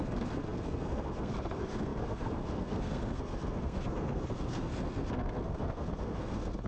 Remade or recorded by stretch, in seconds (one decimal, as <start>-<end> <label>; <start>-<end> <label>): 0.0-6.7 remade